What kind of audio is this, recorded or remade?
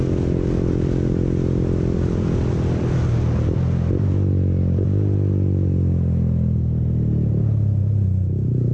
recorded